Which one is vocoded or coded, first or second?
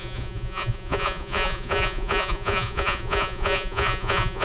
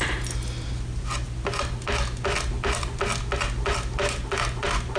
first